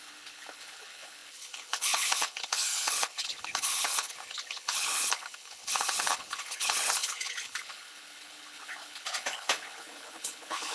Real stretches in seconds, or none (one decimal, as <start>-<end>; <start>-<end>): none